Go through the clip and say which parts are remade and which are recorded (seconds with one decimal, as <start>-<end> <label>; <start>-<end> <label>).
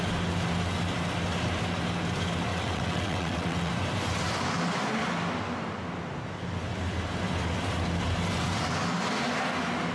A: 0.0-2.5 recorded; 2.5-3.7 remade; 3.7-9.9 recorded